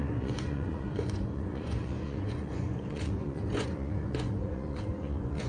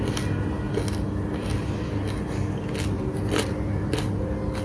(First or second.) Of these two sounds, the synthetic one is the first